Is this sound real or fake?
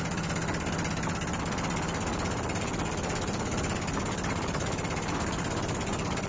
real